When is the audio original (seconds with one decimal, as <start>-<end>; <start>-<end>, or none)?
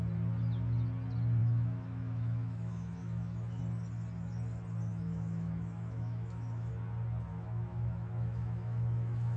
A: 0.0-1.4; 3.6-4.9; 6.7-7.3